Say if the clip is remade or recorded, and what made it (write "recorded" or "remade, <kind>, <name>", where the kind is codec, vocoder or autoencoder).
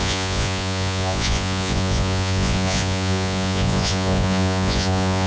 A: remade, vocoder, Vocos